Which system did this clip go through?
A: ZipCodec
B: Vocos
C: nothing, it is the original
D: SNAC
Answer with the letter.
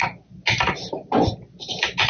C